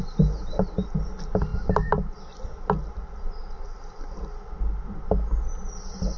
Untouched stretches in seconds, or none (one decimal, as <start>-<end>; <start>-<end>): 0.0-6.2

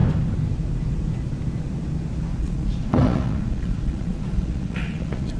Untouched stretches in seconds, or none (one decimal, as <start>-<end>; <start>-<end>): 0.0-2.3

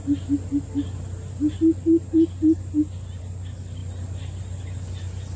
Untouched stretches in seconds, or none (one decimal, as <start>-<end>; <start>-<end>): 0.0-5.4

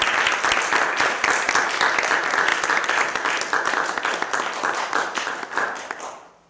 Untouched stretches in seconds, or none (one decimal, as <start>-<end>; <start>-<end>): 0.0-6.5

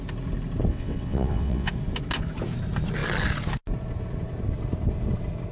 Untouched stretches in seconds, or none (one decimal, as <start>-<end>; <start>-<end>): 0.0-0.7; 1.7-5.5

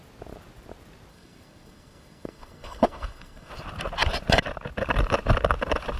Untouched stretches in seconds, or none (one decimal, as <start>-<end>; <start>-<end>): 0.0-1.1; 3.5-6.0

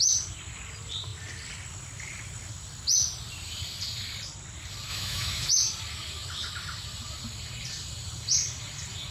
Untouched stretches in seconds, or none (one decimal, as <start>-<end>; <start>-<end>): 0.0-4.9; 5.5-9.1

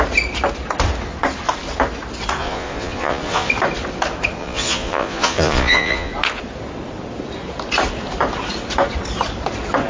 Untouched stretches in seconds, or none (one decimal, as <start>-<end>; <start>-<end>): 0.0-2.4; 3.5-4.4; 6.1-9.9